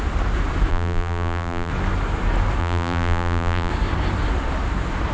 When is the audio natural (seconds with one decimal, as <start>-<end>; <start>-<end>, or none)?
0.0-0.7; 1.7-2.6; 3.7-5.1